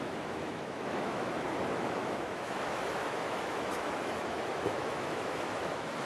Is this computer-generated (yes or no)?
yes